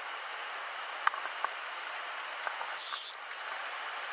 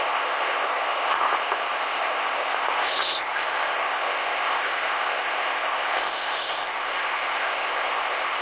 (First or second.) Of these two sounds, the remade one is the second